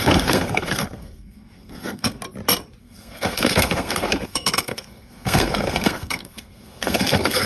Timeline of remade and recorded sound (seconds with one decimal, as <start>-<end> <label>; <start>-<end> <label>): 0.0-2.2 remade; 2.2-2.8 recorded; 2.8-7.5 remade